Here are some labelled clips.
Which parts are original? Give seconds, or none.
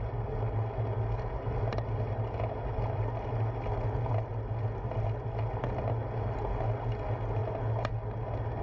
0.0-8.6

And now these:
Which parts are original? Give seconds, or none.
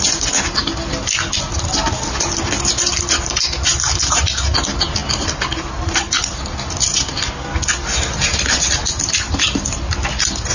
0.0-10.5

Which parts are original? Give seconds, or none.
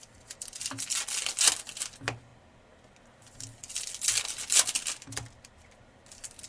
0.0-6.5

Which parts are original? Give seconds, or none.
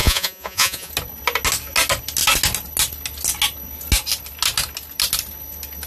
0.9-5.9